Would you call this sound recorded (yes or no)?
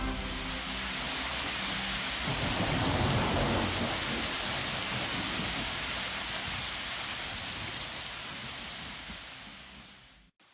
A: yes